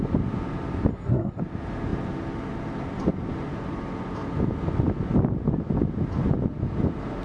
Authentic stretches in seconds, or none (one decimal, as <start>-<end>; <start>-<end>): 0.0-0.9; 1.4-7.2